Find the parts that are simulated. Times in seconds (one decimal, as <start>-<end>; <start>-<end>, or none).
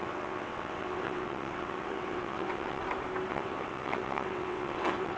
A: 0.0-2.8; 3.3-5.2